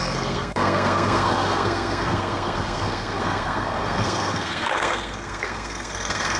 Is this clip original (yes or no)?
no